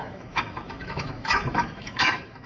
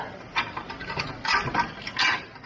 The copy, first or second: first